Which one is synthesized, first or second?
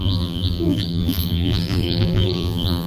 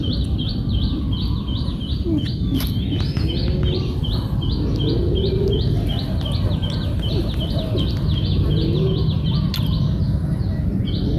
first